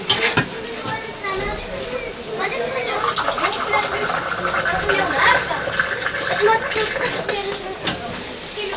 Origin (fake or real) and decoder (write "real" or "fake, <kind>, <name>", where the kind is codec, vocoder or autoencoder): real